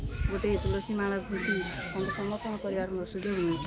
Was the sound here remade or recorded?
remade